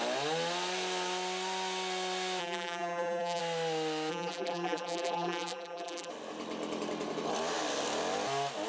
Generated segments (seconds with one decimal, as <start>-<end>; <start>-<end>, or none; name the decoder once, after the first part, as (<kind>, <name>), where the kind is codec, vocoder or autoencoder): 2.4-3.4 (vocoder, BigVGAN v2); 4.1-6.1